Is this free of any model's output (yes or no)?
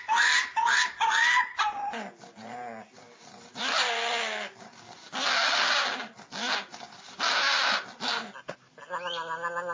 yes